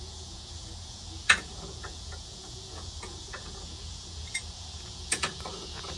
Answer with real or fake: fake